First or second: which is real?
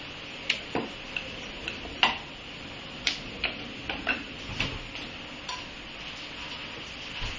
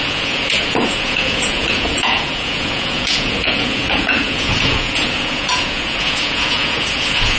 first